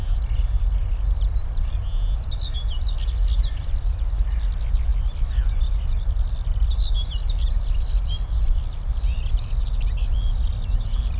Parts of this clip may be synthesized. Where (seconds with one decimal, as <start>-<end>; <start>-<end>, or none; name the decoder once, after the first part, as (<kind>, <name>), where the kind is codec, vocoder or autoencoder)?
none